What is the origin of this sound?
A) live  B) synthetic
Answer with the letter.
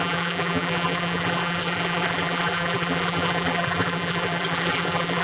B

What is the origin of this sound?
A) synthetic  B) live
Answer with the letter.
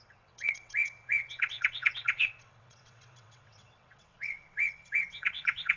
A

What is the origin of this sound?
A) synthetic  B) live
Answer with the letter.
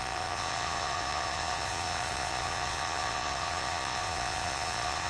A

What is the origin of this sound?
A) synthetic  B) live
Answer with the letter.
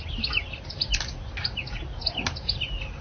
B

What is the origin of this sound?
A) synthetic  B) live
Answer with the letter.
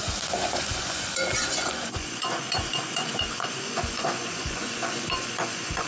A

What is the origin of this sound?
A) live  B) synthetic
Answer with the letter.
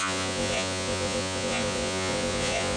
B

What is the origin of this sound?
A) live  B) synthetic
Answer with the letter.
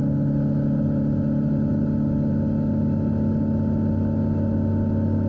A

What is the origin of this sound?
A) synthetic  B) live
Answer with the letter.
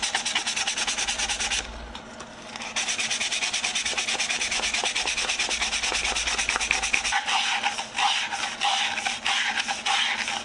B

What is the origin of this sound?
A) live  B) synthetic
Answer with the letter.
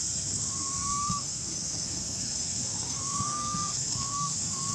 B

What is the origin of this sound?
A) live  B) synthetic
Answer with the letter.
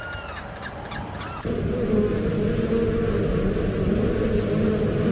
A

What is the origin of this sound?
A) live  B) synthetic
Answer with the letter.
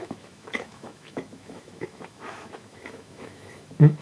B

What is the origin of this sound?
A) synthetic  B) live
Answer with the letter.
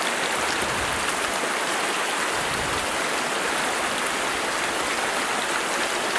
B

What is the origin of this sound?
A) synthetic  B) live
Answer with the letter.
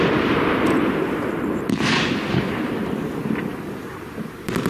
A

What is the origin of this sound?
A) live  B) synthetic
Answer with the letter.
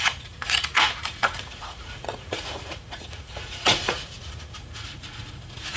B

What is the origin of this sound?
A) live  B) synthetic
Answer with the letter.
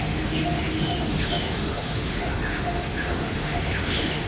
B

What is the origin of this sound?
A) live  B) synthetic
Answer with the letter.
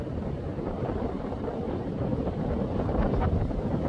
B